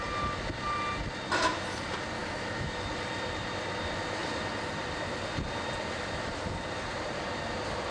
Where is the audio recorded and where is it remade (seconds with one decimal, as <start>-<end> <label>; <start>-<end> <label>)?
0.0-2.2 recorded; 2.2-2.9 remade; 2.9-7.9 recorded